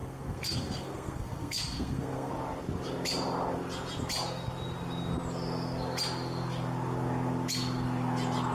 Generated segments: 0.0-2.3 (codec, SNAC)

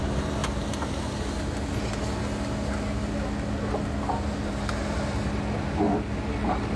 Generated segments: none

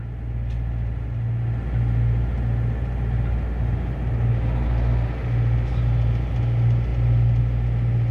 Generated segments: none

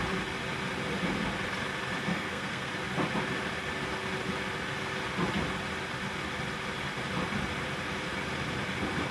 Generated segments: 2.1-2.7 (codec, SNAC)